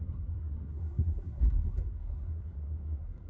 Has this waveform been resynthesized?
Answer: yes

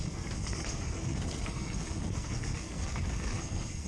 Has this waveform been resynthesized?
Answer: yes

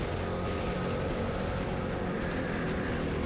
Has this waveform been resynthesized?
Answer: no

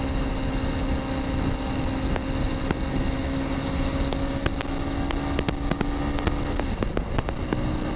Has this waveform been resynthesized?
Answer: no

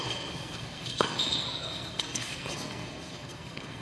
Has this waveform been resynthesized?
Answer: yes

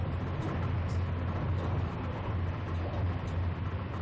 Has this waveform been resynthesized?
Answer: no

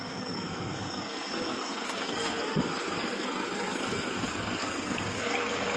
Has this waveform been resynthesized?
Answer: yes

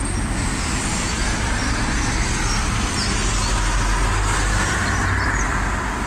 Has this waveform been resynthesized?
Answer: no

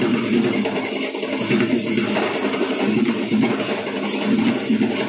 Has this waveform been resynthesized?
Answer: no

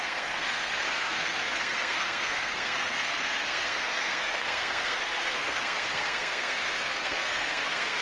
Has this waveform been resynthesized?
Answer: yes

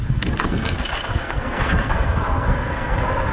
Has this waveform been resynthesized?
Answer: yes